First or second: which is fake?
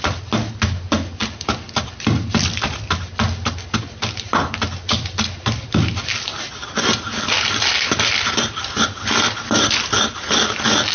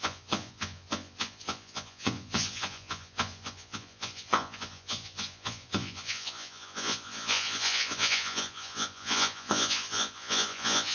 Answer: second